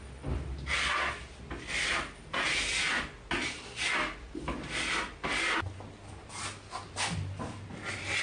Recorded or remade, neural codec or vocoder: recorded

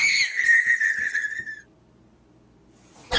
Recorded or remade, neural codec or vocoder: recorded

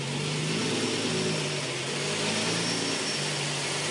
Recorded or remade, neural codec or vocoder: recorded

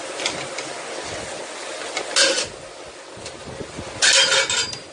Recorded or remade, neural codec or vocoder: recorded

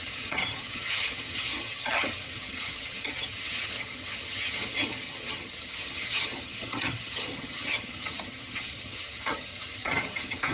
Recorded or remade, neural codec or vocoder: remade, vocoder, HiFi-GAN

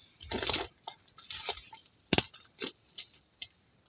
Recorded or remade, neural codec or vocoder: recorded